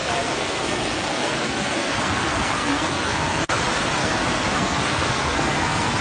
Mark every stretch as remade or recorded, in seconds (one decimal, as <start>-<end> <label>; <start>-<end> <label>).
0.0-3.6 remade; 3.6-4.0 recorded; 4.0-6.0 remade